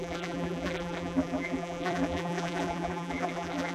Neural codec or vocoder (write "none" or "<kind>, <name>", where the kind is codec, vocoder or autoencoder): vocoder, BigVGAN v2